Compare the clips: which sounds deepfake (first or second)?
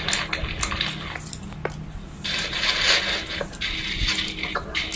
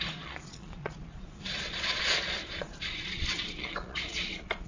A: second